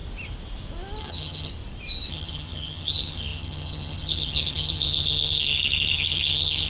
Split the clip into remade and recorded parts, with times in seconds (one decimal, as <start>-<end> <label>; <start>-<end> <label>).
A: 0.0-1.0 recorded; 1.0-1.5 remade; 1.5-2.1 recorded; 2.1-6.7 remade

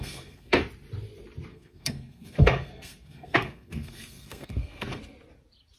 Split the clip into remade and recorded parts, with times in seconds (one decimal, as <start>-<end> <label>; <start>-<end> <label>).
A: 0.0-0.6 remade; 0.6-1.5 recorded; 1.5-5.0 remade; 5.0-5.8 recorded

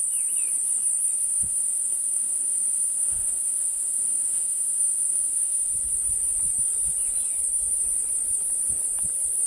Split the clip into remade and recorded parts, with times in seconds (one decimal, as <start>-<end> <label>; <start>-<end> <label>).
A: 0.0-1.2 recorded; 1.2-5.7 remade; 5.7-9.5 recorded

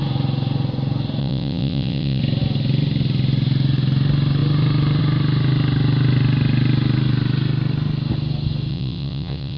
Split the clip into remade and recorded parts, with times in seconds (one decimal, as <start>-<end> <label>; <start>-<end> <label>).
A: 0.0-1.2 recorded; 1.2-2.2 remade; 2.2-8.7 recorded; 8.7-9.6 remade

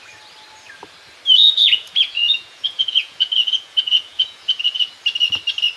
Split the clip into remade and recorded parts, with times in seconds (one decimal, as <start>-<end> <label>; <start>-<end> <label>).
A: 0.0-1.4 recorded; 1.4-4.9 remade; 4.9-5.8 recorded